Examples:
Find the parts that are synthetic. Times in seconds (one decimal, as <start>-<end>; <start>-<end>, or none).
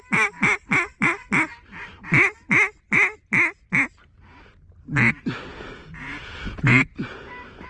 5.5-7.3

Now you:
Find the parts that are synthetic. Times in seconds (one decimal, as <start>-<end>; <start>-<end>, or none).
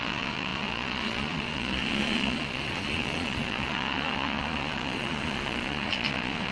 0.0-6.5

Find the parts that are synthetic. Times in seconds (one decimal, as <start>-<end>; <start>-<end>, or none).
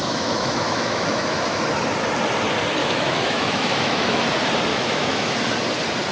0.0-1.6; 2.8-4.2; 4.7-5.4